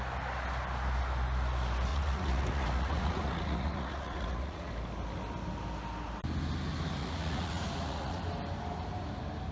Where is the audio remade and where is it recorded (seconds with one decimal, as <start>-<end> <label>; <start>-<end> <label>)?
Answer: 0.0-1.9 recorded; 1.9-4.7 remade; 4.7-7.0 recorded; 7.0-8.2 remade; 8.2-9.5 recorded